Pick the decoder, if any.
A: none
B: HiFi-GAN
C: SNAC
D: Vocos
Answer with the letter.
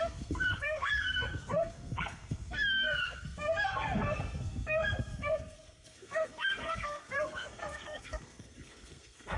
C